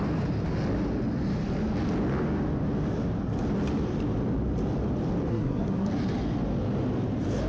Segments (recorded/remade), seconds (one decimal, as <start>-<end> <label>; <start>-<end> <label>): 0.0-5.3 recorded; 5.3-5.9 remade; 5.9-7.5 recorded

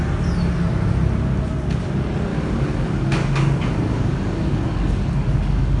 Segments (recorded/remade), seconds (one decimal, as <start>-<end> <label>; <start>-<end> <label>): 0.0-2.3 recorded; 2.3-5.8 remade

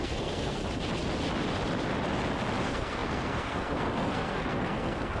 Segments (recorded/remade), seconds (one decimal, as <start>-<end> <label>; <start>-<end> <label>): 0.0-0.6 remade; 0.6-2.6 recorded; 2.6-5.2 remade

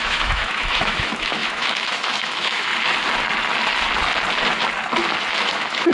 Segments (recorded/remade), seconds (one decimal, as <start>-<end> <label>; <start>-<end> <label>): 0.0-2.7 remade; 2.7-5.4 recorded; 5.4-5.9 remade

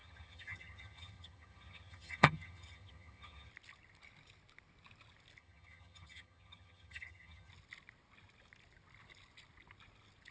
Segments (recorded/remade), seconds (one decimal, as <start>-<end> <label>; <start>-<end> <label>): 0.0-3.5 remade; 3.5-5.4 recorded; 5.4-7.5 remade; 7.5-10.3 recorded

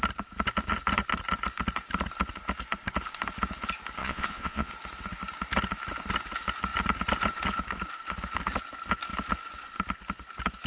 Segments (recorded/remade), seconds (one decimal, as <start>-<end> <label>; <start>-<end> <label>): 0.0-4.0 recorded; 4.0-4.7 remade; 4.7-10.7 recorded